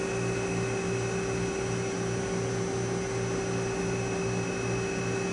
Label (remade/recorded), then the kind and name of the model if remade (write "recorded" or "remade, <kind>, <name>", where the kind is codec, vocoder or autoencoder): recorded